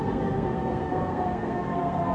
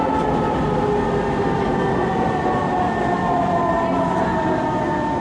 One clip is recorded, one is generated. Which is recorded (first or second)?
second